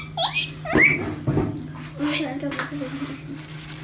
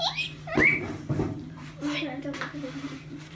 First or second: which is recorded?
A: first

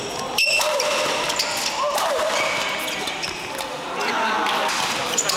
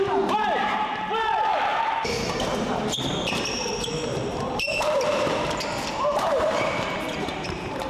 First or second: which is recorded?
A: first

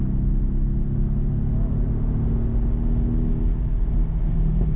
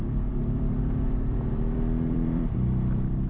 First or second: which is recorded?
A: first